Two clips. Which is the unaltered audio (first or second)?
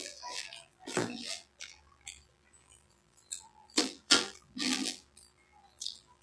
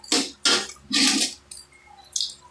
second